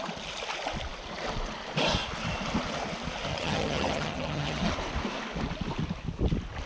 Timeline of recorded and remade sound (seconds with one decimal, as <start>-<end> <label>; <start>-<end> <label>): 0.0-3.3 recorded; 3.3-4.7 remade; 4.7-6.7 recorded